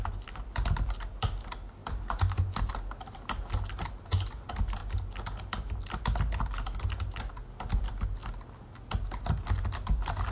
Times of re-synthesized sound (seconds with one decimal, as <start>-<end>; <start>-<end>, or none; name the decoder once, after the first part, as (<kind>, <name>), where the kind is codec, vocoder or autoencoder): none